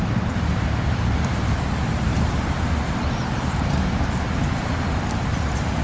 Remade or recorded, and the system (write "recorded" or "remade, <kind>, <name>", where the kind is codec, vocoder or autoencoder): remade, vocoder, BigVGAN v2